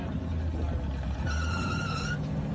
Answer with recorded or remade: recorded